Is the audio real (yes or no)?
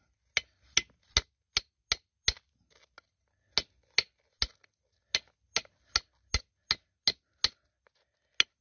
yes